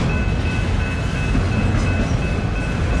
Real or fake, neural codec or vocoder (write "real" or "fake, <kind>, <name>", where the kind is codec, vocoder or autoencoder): real